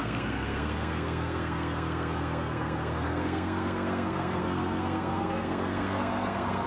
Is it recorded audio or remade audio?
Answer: remade